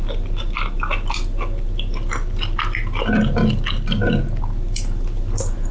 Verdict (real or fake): real